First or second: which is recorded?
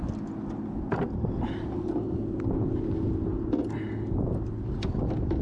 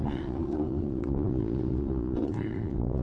first